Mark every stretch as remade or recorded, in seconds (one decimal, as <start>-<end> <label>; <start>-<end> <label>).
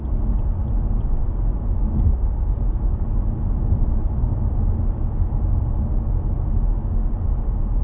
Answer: 0.0-7.8 recorded